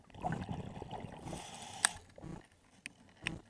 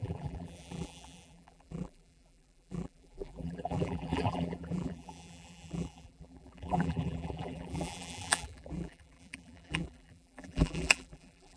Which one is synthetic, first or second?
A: second